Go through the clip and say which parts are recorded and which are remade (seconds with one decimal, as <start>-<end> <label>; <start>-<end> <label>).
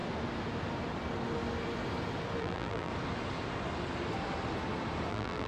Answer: 0.0-2.4 recorded; 2.4-2.9 remade; 2.9-5.1 recorded; 5.1-5.5 remade